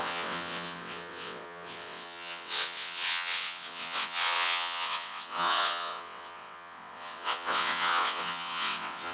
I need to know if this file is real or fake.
fake